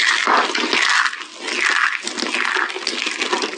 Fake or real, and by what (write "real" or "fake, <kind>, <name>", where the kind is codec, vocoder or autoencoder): real